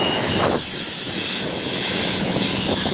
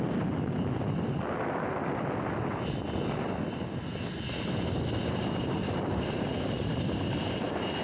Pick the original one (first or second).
second